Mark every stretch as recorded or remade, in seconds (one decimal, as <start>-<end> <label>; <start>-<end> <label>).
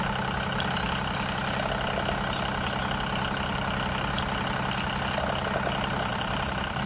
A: 0.0-6.1 recorded; 6.1-6.9 remade